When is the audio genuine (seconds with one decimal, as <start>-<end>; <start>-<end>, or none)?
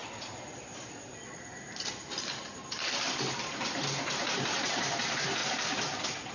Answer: 5.4-6.3